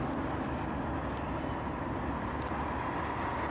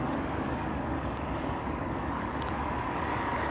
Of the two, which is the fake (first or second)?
second